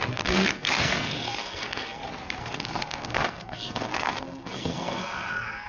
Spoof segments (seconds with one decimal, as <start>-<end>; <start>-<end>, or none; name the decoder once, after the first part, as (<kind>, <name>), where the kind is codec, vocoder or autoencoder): 0.0-2.0 (codec, SNAC); 2.4-5.7